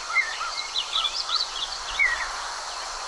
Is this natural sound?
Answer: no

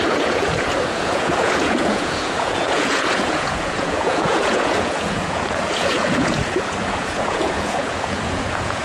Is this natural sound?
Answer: no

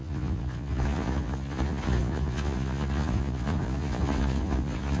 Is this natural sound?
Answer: no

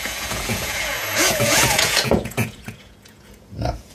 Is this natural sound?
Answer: no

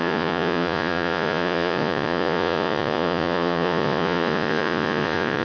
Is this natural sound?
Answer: no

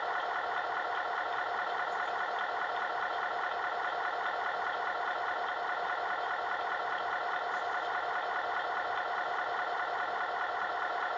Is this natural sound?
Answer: yes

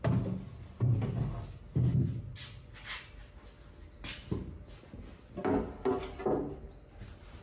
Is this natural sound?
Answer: yes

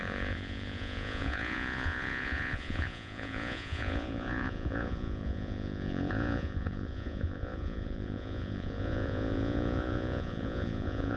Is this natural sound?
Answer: no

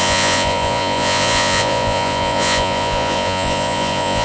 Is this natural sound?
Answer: no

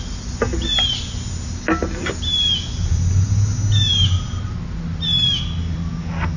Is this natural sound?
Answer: yes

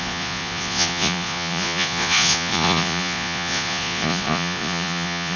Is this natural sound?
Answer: no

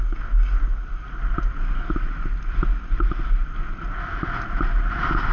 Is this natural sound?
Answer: yes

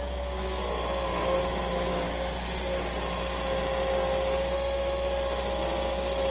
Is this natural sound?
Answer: yes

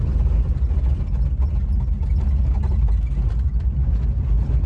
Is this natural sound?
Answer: yes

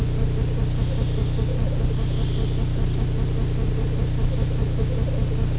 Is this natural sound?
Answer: yes